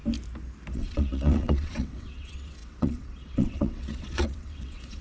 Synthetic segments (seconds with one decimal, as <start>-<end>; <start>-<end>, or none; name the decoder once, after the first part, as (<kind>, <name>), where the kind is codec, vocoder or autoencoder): 0.7-5.0 (vocoder, WaveNeXt)